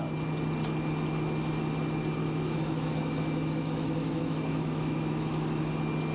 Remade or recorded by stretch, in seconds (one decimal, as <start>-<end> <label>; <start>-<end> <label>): 0.0-2.2 recorded; 2.2-5.6 remade; 5.6-6.1 recorded

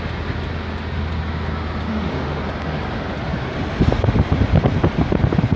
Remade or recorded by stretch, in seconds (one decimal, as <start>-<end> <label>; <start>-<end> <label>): 0.0-1.9 recorded; 1.9-2.4 remade; 2.4-5.6 recorded

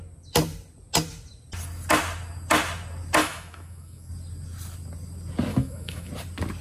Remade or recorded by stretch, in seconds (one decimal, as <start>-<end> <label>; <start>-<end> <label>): 0.0-3.2 recorded; 3.2-4.1 remade; 4.1-5.5 recorded; 5.5-6.1 remade; 6.1-6.6 recorded